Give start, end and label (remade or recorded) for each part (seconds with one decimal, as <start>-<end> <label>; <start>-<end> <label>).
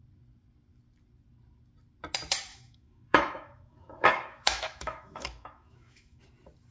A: 0.0-2.5 recorded; 2.5-6.2 remade; 6.2-6.7 recorded